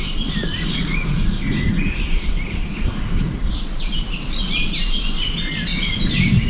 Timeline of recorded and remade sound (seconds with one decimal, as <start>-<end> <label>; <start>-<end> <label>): 0.0-0.4 recorded; 0.4-3.5 remade; 3.5-5.7 recorded; 5.7-6.5 remade